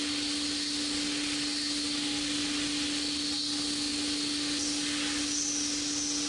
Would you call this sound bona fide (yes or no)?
yes